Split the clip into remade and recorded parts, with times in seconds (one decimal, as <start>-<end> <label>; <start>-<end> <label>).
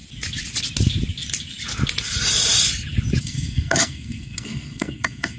0.0-3.2 recorded; 3.2-5.4 remade